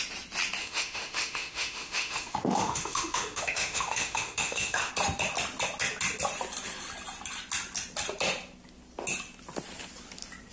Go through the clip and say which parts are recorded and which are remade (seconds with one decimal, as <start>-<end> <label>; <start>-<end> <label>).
0.0-0.6 recorded; 0.6-4.9 remade; 4.9-10.5 recorded